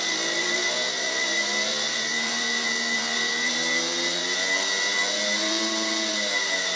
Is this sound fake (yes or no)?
yes